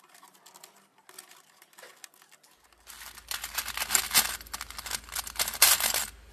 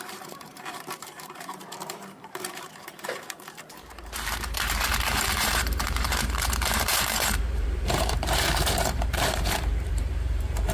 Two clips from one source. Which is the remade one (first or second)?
second